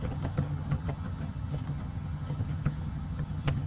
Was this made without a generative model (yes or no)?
no